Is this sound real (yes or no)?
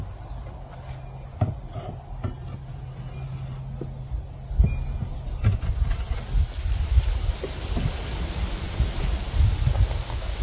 yes